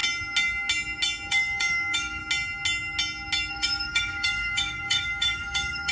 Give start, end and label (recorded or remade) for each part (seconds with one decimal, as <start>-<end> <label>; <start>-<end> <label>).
0.0-1.3 recorded; 1.3-2.2 remade; 2.2-3.5 recorded; 3.5-5.9 remade